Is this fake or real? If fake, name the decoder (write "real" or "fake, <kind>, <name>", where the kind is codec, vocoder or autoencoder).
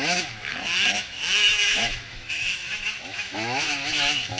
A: fake, autoencoder, DAC-VAE